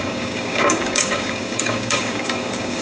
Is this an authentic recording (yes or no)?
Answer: no